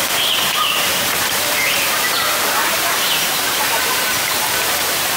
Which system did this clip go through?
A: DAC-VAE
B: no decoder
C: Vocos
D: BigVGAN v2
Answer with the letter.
D